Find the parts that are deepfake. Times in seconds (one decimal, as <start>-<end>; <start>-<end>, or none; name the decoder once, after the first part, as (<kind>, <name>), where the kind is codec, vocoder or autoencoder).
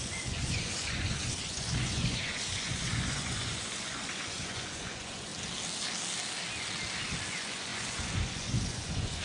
0.0-5.3 (vocoder, Vocos); 7.3-9.2